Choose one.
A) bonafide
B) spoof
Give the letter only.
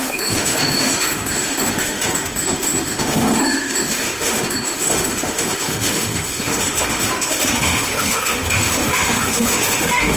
B